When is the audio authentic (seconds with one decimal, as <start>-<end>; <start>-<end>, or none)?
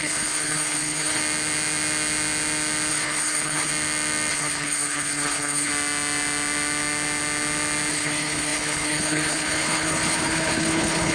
1.2-2.9; 3.7-4.3; 5.7-7.9